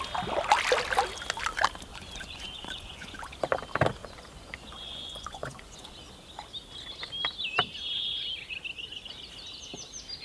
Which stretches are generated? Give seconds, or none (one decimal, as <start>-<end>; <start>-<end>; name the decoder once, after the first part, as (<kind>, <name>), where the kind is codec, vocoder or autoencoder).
1.9-3.4 (vocoder, Vocos); 4.0-5.9